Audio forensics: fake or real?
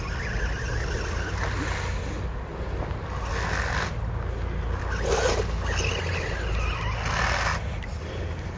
real